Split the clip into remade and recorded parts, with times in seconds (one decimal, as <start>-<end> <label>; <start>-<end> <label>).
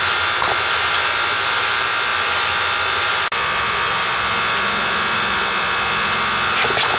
0.0-7.0 recorded